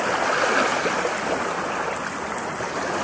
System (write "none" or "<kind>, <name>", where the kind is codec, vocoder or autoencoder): none